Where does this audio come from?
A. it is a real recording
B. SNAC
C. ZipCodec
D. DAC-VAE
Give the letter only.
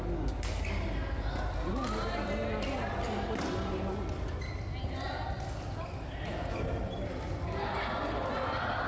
A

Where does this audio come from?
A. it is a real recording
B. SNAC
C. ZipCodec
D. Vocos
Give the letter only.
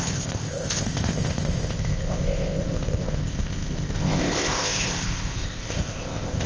C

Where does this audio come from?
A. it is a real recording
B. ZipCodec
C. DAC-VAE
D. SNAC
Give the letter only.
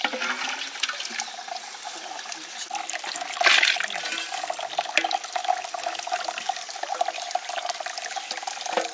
A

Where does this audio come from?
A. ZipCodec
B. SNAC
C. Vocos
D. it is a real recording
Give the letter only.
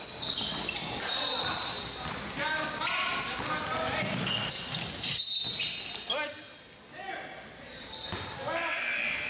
D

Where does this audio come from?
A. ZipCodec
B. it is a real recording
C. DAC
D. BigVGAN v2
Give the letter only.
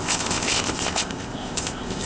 A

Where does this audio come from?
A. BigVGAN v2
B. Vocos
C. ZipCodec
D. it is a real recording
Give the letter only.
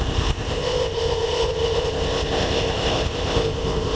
C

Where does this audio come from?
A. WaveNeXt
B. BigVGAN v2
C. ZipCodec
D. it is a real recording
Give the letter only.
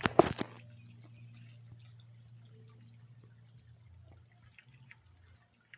D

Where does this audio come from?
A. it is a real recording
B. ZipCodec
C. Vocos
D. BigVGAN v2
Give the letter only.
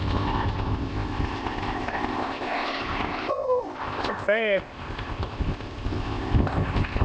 B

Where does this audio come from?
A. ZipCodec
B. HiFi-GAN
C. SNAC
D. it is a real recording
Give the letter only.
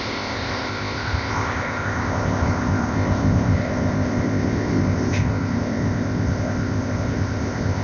A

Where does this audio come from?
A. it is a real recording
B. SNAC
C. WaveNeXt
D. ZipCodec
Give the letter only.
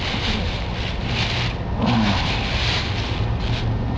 A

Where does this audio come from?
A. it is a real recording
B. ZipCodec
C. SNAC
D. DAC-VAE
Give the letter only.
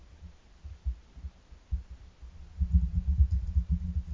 A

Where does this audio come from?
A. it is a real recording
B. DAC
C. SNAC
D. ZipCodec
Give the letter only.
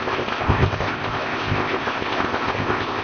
D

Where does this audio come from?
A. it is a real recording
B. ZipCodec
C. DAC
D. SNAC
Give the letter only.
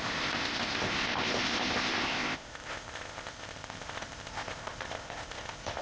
B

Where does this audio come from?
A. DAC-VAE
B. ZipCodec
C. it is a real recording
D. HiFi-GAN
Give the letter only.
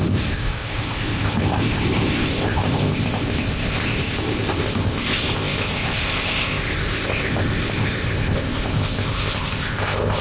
B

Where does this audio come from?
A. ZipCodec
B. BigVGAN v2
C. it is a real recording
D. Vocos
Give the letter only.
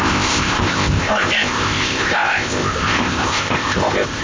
A